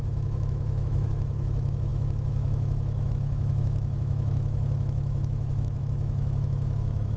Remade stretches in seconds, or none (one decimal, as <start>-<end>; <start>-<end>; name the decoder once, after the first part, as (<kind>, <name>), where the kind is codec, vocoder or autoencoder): 0.0-7.2 (autoencoder, DAC-VAE)

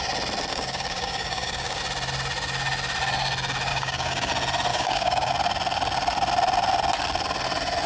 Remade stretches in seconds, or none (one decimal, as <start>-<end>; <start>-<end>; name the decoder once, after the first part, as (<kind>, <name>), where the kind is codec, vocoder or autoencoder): 0.5-1.8 (codec, DAC); 3.7-4.3; 4.7-5.3

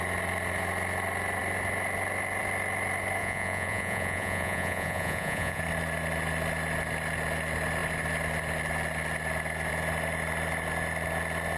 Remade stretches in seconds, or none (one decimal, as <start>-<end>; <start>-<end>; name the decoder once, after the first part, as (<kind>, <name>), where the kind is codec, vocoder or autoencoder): 3.2-5.6 (vocoder, Vocos)

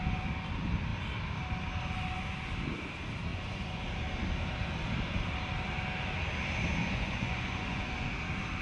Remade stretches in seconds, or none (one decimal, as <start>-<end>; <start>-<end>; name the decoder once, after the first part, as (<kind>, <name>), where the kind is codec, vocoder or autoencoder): 3.3-3.8 (vocoder, Vocos); 6.8-8.1

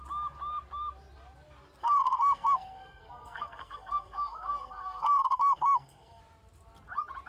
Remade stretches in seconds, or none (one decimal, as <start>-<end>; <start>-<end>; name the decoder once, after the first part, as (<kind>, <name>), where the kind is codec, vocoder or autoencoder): 1.8-6.2 (codec, SNAC)

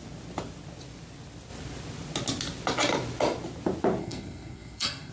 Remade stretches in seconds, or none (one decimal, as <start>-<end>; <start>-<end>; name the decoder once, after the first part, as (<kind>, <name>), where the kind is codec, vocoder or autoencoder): 4.0-5.1 (codec, SNAC)

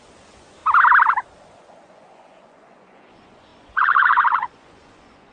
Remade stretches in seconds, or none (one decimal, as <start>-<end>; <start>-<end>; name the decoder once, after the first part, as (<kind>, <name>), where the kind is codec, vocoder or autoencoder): 0.0-0.6 (vocoder, Vocos); 1.4-5.3

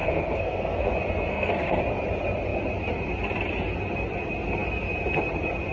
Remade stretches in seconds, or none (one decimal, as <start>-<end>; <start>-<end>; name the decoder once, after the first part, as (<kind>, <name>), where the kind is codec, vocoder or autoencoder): 0.0-0.9 (codec, SNAC); 1.3-1.8